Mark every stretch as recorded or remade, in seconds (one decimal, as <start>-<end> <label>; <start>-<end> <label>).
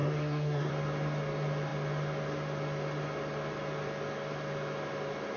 0.0-0.7 remade; 0.7-5.4 recorded